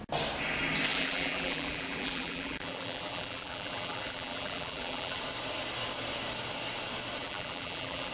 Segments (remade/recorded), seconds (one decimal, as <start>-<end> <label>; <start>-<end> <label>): 0.0-0.9 recorded; 0.9-5.2 remade; 5.2-7.2 recorded; 7.2-8.1 remade